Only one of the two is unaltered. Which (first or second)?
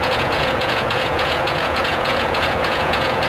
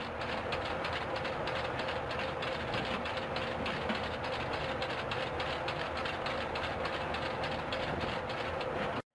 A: second